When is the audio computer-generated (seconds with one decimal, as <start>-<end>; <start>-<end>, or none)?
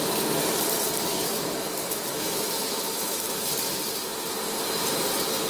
1.1-3.4